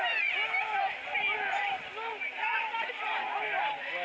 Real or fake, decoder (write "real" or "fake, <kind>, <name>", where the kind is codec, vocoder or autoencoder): real